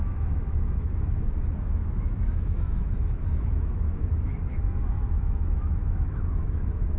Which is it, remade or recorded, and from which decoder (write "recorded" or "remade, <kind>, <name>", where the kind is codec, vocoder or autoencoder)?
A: remade, autoencoder, DAC-VAE